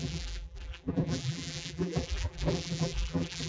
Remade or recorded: remade